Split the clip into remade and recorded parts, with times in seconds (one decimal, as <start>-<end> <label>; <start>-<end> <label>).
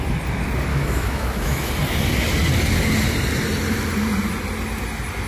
0.0-0.7 recorded; 0.7-1.7 remade; 1.7-5.3 recorded